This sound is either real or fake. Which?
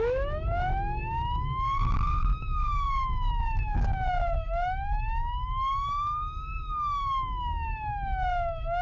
fake